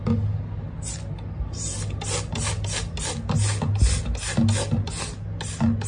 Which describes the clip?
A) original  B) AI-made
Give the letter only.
A